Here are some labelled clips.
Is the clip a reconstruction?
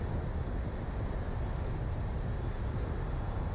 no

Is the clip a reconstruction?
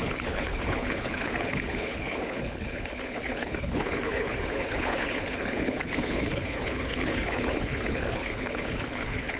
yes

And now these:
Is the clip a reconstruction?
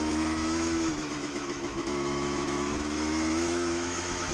yes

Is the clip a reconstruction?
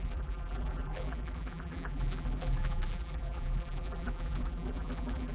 yes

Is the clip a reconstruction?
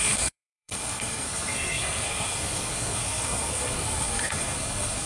yes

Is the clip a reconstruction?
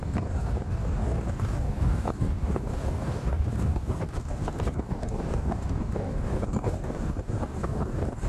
yes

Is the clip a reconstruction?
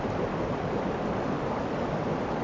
no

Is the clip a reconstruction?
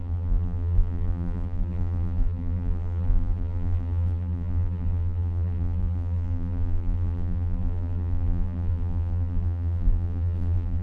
yes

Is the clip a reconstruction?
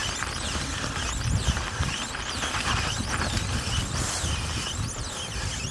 no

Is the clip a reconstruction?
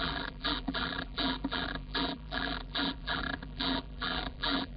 yes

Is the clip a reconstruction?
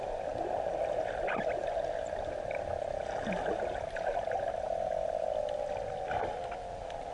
no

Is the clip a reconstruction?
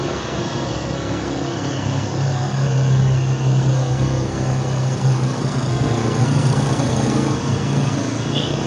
yes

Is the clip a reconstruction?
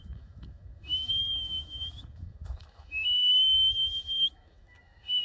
yes